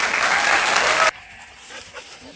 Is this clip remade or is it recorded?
recorded